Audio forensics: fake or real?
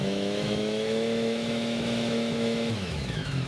fake